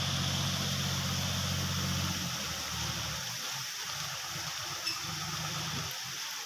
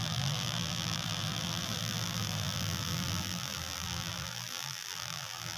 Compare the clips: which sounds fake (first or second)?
second